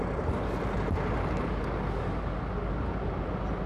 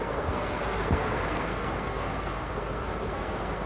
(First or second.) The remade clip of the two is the second